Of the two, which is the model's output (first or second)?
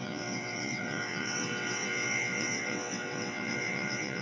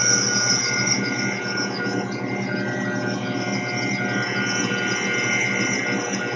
first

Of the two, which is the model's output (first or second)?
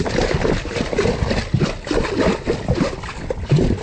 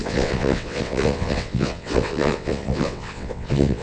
second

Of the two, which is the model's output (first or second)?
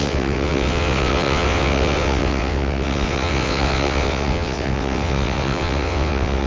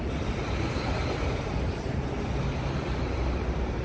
first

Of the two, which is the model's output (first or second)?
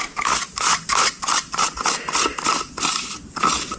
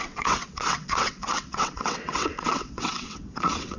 second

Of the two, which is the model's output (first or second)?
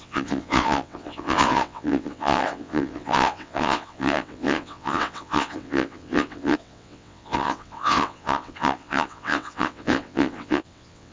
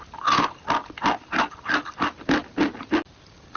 first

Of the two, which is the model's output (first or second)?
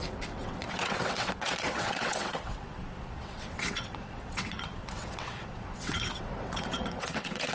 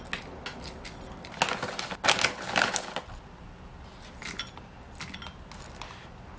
first